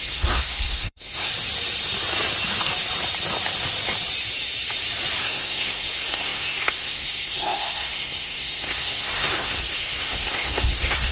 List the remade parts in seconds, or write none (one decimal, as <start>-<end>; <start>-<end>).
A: 0.0-1.3; 5.2-11.1